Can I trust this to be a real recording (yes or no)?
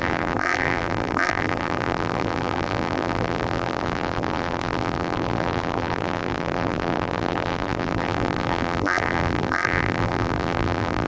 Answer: no